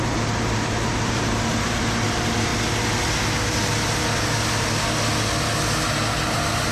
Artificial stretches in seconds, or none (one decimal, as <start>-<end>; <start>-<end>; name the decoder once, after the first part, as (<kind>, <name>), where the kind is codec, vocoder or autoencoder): 0.0-2.5 (vocoder, BigVGAN v2)